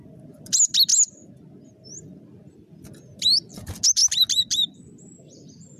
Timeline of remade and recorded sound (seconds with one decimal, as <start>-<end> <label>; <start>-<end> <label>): 0.0-5.8 recorded